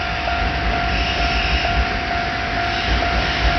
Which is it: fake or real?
real